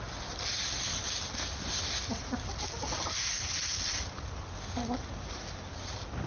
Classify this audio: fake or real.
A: real